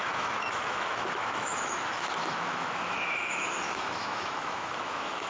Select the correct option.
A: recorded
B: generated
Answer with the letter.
B